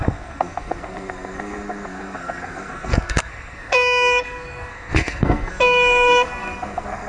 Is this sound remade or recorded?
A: remade